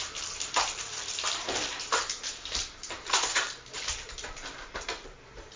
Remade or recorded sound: remade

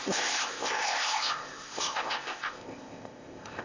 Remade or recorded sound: remade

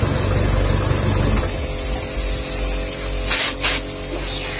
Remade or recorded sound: recorded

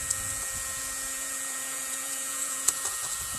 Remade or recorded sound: remade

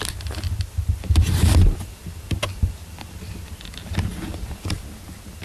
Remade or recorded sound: recorded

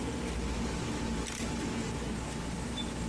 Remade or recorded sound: recorded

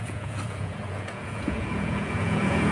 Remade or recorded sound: remade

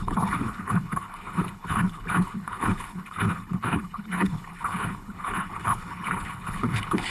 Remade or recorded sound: remade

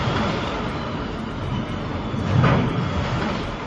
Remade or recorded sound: recorded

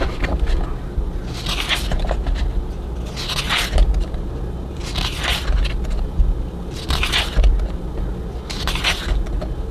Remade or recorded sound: recorded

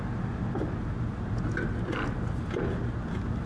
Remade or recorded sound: recorded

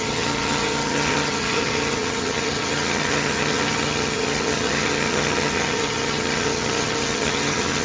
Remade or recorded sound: remade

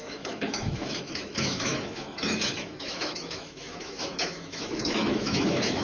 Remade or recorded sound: remade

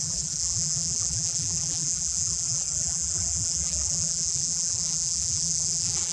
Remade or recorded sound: remade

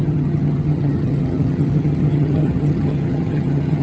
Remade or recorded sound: remade